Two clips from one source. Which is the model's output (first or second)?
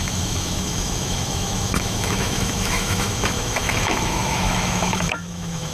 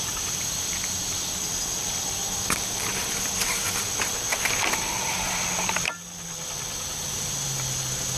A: first